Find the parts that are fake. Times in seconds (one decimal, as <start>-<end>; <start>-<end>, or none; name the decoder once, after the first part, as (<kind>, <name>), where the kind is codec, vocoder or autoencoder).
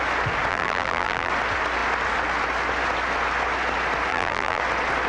0.5-1.3 (vocoder, BigVGAN v2); 4.1-4.6